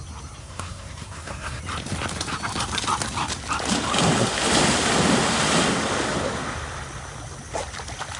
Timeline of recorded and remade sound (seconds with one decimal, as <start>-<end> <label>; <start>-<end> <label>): 0.0-0.4 recorded; 0.4-1.6 remade; 1.6-8.2 recorded